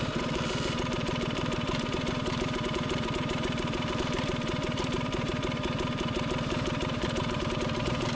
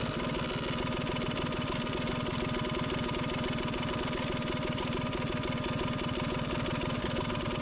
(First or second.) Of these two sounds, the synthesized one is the first